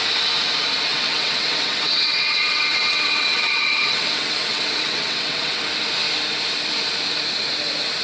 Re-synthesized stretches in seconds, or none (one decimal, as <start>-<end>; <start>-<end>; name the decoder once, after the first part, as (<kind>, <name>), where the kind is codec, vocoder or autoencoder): 0.9-5.6 (vocoder, WaveNeXt)